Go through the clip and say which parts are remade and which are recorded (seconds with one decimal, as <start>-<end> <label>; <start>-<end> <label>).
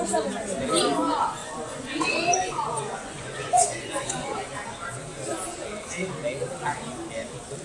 0.0-1.4 recorded; 1.4-4.5 remade; 4.5-7.6 recorded